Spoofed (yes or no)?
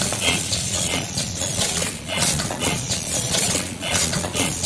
yes